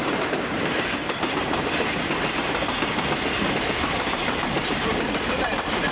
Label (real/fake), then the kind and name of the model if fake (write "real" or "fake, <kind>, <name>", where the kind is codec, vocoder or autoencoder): fake, vocoder, BigVGAN v2